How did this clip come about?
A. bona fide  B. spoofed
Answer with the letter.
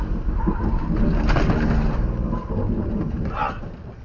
A